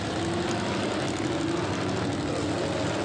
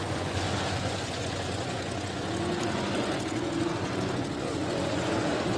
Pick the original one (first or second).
first